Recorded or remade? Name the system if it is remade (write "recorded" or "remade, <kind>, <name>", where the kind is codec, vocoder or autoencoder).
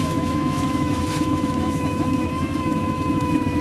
remade, autoencoder, DAC-VAE